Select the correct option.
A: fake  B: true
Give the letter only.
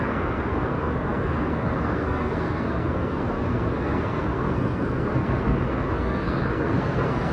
A